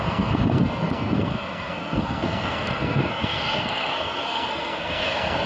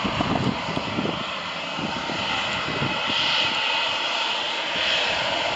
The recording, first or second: second